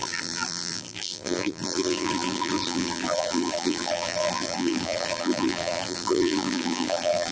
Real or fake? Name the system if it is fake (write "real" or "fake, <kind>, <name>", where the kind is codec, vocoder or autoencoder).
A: fake, vocoder, BigVGAN v2